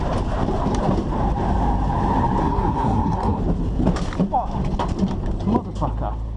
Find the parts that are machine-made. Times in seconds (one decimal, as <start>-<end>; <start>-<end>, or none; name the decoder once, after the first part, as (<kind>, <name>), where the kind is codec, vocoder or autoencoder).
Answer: 2.4-3.4 (codec, SNAC)